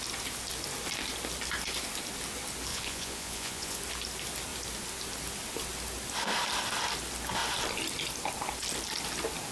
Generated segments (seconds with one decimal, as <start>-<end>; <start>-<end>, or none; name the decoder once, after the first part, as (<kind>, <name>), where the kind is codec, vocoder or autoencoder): 2.7-3.8 (vocoder, Vocos)